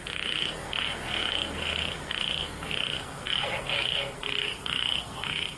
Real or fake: fake